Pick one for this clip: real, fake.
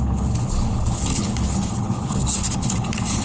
fake